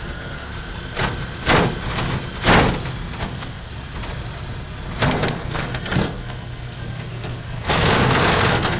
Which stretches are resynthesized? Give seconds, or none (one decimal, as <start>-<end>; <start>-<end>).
0.0-0.5; 3.2-3.7; 5.1-8.8